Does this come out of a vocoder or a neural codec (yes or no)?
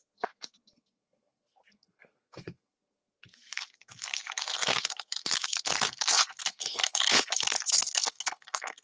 yes